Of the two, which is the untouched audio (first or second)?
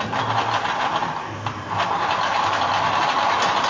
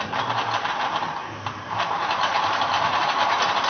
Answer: first